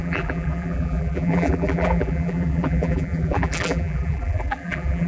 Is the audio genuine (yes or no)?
no